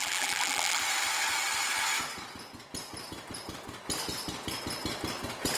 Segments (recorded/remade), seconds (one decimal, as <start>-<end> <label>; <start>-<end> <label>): 0.0-0.8 remade; 0.8-5.6 recorded